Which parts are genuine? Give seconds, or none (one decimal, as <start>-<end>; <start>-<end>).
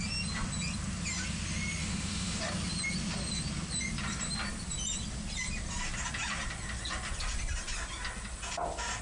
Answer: 0.0-1.8; 2.4-9.0